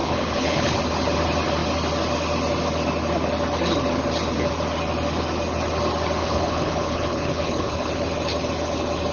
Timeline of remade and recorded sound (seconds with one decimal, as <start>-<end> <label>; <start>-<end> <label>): 0.0-0.8 remade; 0.8-6.2 recorded; 6.2-7.9 remade; 7.9-9.1 recorded